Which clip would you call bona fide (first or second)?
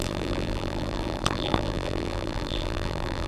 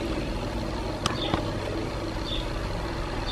second